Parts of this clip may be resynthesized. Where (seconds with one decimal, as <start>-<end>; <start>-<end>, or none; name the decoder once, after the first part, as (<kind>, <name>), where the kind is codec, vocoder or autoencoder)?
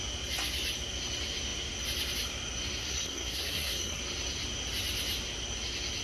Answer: 2.8-4.0 (codec, SNAC)